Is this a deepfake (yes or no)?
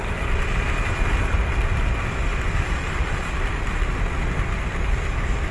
no